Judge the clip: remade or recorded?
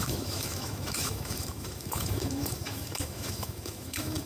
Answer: remade